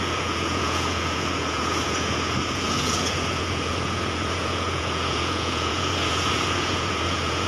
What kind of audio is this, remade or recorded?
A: remade